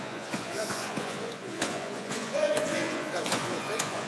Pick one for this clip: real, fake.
fake